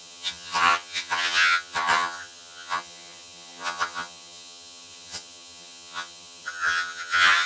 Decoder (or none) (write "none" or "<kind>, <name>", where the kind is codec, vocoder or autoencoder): vocoder, HiFi-GAN